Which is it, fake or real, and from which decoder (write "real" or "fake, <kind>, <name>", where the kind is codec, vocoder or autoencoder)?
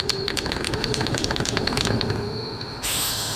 fake, autoencoder, DAC-VAE